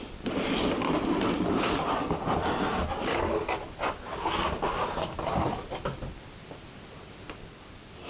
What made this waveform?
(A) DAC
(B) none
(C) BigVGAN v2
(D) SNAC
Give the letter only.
B